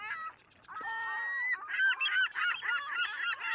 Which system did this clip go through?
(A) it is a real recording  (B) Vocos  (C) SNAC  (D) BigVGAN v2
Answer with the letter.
A